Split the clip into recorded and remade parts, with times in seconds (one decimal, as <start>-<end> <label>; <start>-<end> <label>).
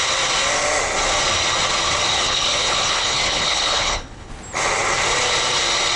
0.0-2.1 recorded; 2.1-4.3 remade; 4.3-6.0 recorded